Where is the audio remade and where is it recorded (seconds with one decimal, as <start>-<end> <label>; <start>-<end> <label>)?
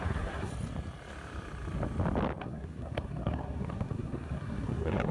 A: 0.0-0.5 remade; 0.5-2.4 recorded; 2.4-5.1 remade